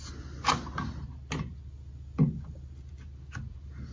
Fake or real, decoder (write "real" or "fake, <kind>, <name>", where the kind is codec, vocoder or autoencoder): real